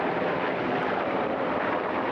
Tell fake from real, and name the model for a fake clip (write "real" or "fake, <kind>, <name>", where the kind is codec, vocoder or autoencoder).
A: fake, vocoder, BigVGAN v2